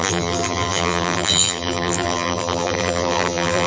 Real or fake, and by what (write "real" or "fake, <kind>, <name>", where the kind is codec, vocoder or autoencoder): fake, vocoder, BigVGAN v2